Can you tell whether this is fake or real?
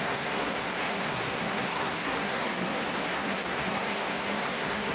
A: fake